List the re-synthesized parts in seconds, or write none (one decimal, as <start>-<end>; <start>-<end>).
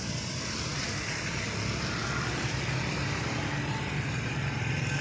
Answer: none